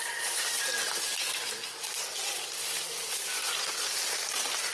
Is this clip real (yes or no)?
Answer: yes